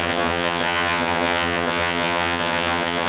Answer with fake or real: fake